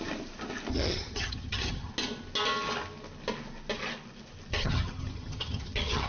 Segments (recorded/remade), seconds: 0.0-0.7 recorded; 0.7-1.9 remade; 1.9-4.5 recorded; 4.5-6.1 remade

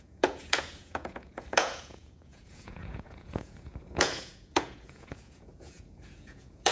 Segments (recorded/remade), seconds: 0.0-6.7 remade

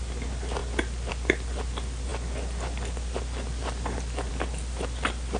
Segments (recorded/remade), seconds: 0.0-5.4 recorded